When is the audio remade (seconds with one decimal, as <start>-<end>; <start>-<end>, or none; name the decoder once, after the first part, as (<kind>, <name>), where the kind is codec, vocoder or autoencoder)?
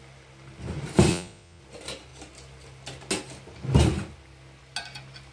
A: 1.1-1.6 (vocoder, Vocos)